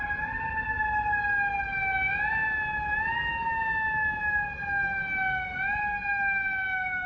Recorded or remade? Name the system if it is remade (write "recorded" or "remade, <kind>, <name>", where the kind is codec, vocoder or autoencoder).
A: recorded